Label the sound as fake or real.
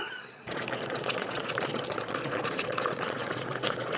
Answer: fake